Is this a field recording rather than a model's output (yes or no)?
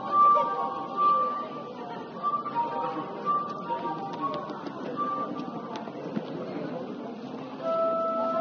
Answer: yes